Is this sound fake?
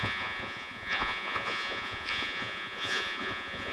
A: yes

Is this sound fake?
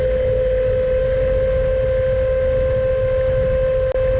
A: no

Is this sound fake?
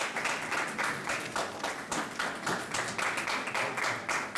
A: no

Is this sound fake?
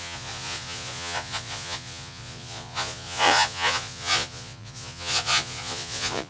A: yes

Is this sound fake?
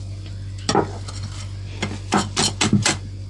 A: no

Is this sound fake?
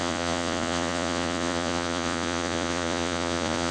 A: yes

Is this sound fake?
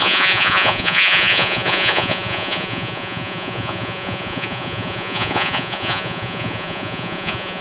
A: yes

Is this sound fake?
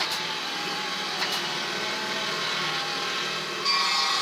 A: no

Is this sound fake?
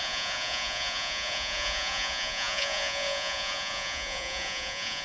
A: yes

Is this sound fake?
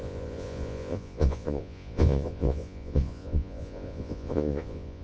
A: yes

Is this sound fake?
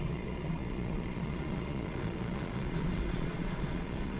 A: yes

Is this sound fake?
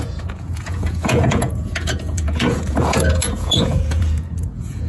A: yes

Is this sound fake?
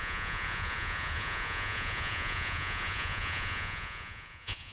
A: yes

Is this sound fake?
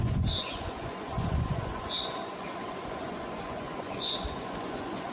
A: yes